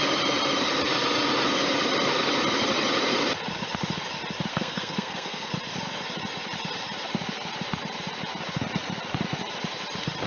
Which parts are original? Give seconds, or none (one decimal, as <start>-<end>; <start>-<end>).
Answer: 0.0-4.5; 5.5-10.3